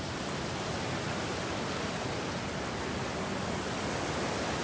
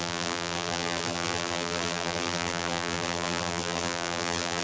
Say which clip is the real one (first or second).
first